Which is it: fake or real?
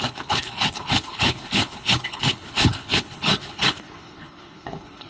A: fake